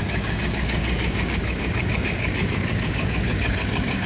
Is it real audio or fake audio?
fake